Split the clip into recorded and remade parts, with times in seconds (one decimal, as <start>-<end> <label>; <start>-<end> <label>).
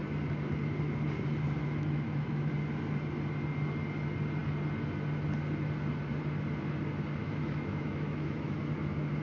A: 0.0-1.6 recorded; 1.6-2.5 remade; 2.5-7.2 recorded; 7.2-8.6 remade; 8.6-9.2 recorded